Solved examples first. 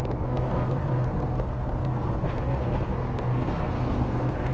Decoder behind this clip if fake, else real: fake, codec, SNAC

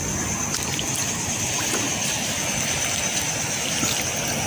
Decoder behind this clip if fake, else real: real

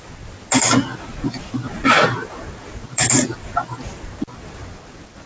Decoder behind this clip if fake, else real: real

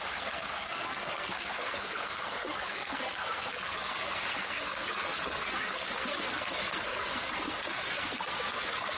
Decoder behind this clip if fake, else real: fake, codec, SNAC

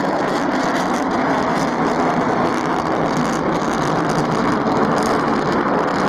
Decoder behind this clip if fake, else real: real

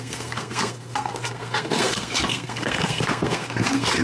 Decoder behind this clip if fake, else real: fake, codec, SNAC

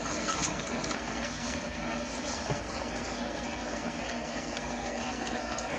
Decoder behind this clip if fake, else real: fake, codec, SNAC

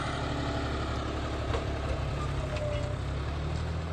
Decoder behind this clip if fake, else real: real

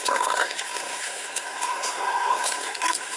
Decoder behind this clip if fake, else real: fake, codec, SNAC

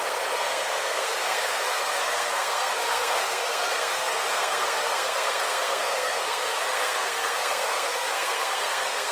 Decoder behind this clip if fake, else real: fake, codec, SNAC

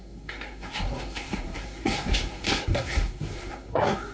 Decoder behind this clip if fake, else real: fake, codec, SNAC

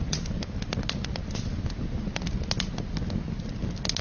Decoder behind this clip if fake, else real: real